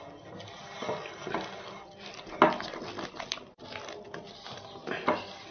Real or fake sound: real